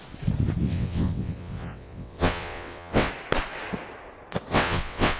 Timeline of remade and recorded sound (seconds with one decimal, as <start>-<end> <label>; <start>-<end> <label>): 0.0-0.6 recorded; 0.6-3.1 remade; 3.1-4.5 recorded; 4.5-5.2 remade